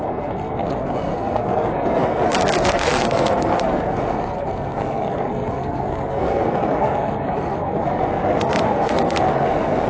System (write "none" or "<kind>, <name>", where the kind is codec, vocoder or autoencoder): codec, SNAC